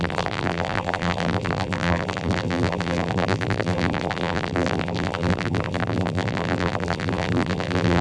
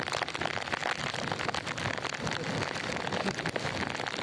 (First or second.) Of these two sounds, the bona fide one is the second